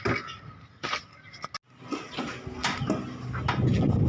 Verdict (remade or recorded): recorded